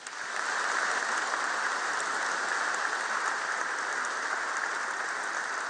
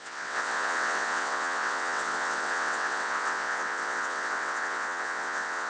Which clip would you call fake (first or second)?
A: second